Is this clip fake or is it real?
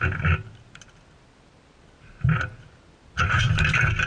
real